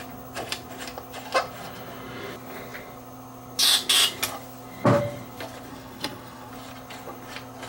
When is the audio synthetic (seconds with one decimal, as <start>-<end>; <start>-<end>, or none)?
5.7-6.5